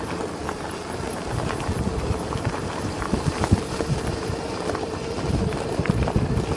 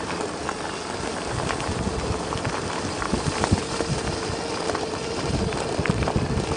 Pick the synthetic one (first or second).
first